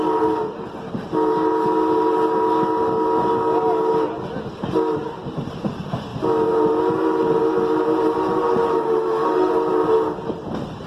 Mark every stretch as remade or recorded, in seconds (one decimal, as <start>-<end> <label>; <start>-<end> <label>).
0.0-8.7 recorded; 8.7-9.5 remade; 9.5-10.9 recorded